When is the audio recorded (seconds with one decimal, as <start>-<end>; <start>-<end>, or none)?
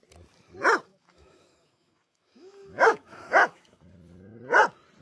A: 0.0-0.9; 3.9-5.0